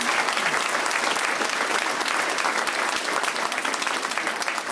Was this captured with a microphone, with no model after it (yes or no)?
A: yes